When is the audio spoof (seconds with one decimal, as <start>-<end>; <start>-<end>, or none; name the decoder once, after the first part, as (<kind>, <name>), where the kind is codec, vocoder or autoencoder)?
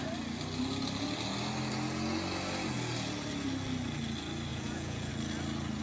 4.5-5.1 (vocoder, Vocos)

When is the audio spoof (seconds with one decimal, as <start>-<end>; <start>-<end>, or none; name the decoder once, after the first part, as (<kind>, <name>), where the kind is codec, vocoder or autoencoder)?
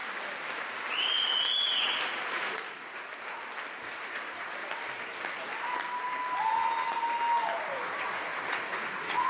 0.9-3.1 (vocoder, Vocos); 3.9-4.6; 8.0-9.3